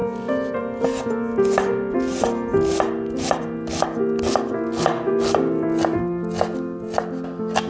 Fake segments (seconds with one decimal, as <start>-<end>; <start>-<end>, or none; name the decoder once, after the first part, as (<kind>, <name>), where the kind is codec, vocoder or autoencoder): none